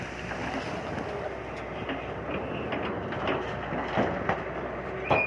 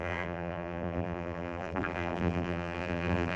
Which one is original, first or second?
first